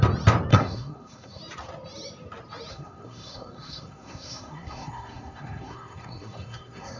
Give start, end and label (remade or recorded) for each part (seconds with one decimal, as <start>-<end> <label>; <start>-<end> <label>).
0.0-0.5 recorded; 0.5-1.4 remade; 1.4-2.7 recorded; 2.7-7.0 remade